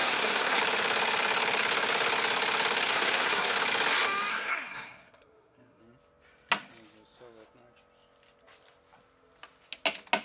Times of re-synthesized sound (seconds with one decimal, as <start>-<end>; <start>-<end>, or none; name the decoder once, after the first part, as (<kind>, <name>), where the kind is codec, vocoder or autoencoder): 0.0-0.6 (codec, SNAC); 2.9-3.5; 4.3-5.8